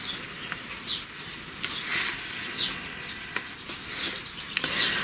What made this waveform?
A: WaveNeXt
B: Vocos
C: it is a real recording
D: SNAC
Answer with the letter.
C